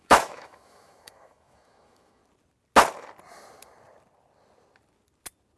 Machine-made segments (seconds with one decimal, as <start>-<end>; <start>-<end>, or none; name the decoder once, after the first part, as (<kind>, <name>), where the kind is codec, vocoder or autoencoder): 0.0-2.2 (autoencoder, DAC-VAE)